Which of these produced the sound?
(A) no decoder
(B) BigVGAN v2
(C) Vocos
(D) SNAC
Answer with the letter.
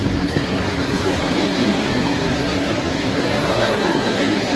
D